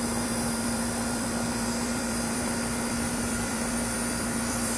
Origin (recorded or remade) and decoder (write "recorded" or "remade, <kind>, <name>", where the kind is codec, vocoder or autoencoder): remade, vocoder, BigVGAN v2